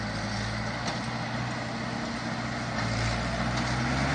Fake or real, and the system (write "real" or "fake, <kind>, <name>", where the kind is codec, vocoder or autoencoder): real